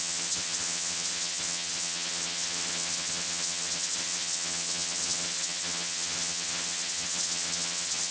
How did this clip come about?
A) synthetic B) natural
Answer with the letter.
A